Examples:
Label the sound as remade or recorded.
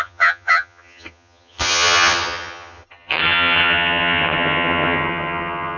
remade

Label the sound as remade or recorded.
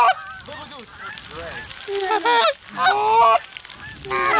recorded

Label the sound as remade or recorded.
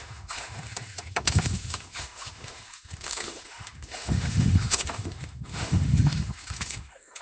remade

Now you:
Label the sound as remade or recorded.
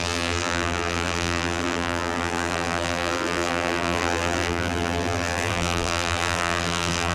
remade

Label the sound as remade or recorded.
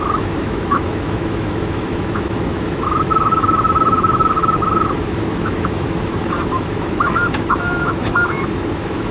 remade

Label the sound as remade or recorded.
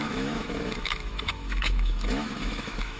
remade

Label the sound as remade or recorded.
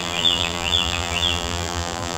remade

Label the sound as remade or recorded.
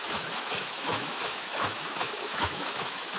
remade